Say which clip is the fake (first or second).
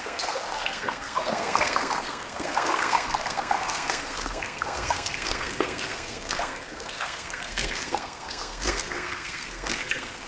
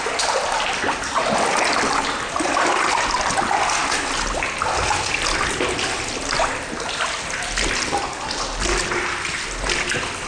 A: first